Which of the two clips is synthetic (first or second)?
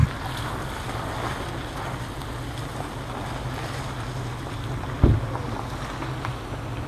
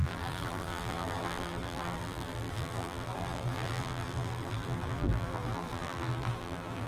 second